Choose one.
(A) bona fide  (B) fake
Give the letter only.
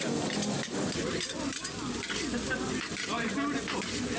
A